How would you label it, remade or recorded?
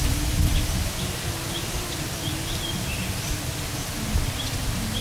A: recorded